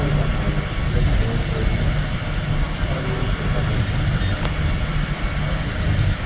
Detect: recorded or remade recorded